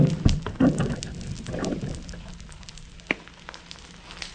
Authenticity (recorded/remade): recorded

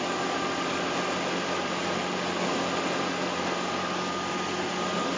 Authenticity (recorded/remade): recorded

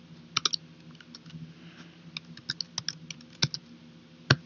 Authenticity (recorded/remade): recorded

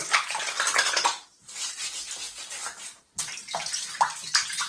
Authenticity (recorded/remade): recorded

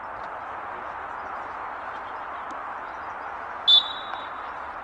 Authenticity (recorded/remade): recorded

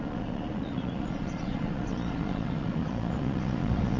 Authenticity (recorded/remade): remade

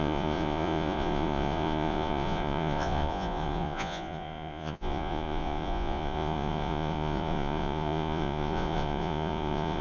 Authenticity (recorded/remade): remade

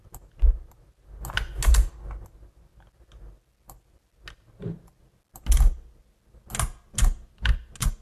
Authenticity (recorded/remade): recorded